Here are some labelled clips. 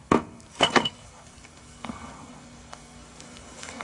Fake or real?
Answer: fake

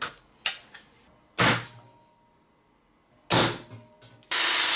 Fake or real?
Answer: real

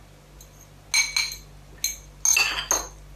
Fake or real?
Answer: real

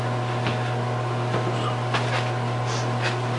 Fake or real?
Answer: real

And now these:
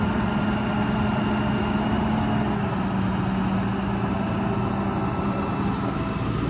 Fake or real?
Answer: real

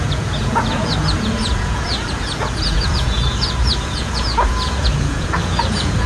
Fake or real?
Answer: fake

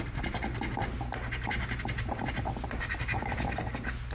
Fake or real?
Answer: real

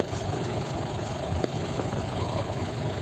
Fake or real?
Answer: fake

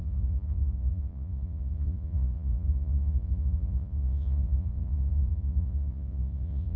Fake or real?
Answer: fake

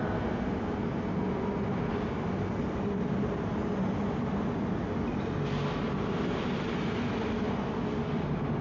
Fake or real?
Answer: real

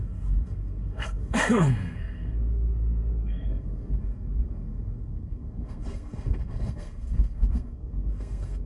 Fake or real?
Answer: fake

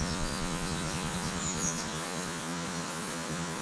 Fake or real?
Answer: fake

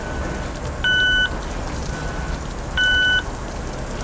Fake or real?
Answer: real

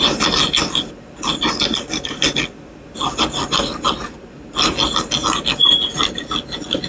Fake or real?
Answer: real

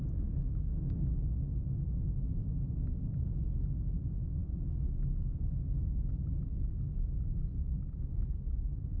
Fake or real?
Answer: real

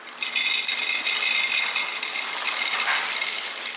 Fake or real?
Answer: real